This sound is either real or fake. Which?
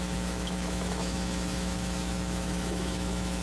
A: fake